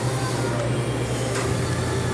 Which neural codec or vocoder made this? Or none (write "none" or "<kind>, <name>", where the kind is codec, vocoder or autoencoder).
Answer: none